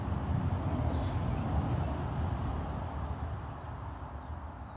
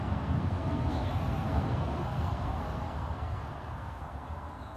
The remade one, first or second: second